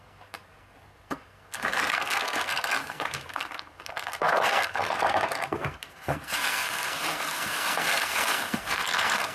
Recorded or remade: remade